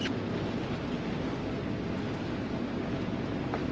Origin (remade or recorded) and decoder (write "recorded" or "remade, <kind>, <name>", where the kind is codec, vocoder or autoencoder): recorded